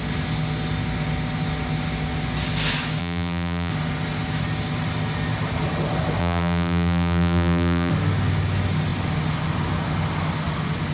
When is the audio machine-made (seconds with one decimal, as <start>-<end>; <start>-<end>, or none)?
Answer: 3.0-3.7; 6.2-7.9